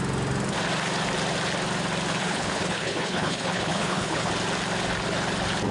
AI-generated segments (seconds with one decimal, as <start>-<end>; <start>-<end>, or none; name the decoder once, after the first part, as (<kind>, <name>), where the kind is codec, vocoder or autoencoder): 2.2-4.3 (codec, HILCodec)